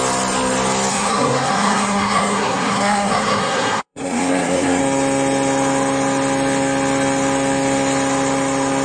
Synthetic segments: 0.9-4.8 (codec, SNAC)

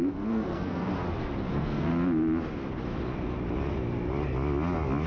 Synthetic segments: 0.0-0.9 (codec, SNAC); 1.5-1.9

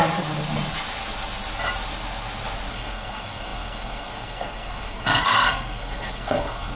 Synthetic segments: 2.7-6.8 (codec, SNAC)

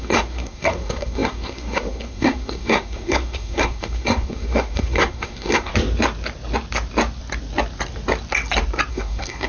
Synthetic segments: 0.0-5.7 (codec, SNAC); 8.9-9.5

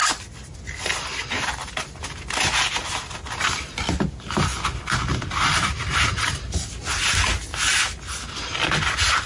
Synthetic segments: none

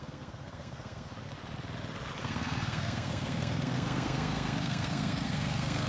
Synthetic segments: 0.0-1.1 (codec, SNAC); 2.2-5.9

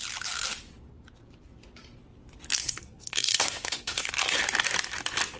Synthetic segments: 2.6-4.1 (codec, SNAC)

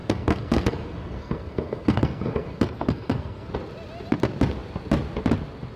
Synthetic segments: 0.0-3.5 (codec, SNAC)